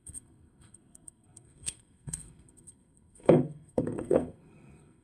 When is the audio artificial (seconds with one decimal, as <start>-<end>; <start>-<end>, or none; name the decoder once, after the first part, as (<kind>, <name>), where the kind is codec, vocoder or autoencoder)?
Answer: 0.0-5.0 (codec, SNAC)